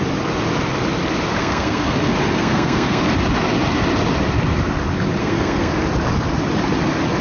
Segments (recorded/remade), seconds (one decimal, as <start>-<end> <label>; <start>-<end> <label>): 0.0-1.4 recorded; 1.4-3.0 remade; 3.0-5.2 recorded; 5.2-5.8 remade; 5.8-7.2 recorded